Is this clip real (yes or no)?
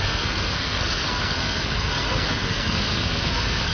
no